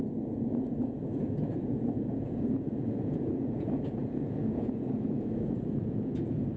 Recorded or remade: remade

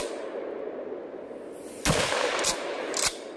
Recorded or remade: recorded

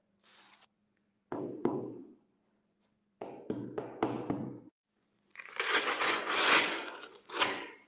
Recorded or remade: remade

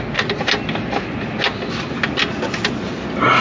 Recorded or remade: recorded